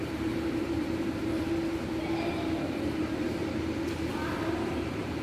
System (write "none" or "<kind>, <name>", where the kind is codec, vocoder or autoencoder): vocoder, BigVGAN v2